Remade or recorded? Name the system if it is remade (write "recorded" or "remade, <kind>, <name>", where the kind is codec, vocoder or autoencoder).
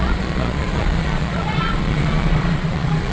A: remade, vocoder, Vocos